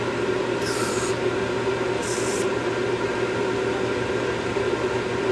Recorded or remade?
recorded